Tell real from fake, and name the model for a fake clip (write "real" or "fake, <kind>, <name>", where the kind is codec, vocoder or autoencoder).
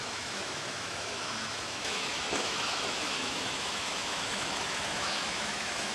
fake, autoencoder, DAC-VAE